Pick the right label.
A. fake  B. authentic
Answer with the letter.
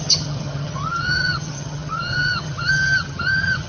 A